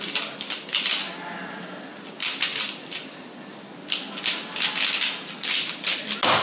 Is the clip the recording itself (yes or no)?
yes